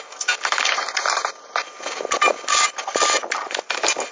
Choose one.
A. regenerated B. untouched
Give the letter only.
B